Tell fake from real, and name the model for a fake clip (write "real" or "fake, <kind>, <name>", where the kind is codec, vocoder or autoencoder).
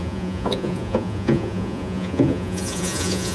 fake, vocoder, Vocos